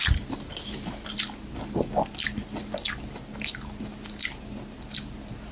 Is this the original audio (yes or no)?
yes